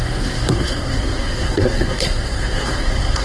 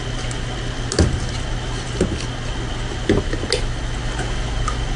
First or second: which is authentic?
second